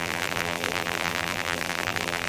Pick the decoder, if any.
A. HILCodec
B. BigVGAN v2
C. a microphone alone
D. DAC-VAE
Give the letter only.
B